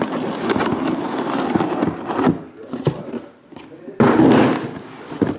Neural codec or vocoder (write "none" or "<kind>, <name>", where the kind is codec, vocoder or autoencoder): none